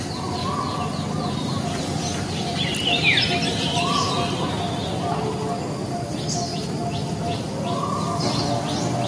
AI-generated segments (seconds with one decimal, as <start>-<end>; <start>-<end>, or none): none